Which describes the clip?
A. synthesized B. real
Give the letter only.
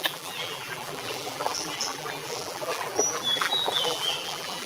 A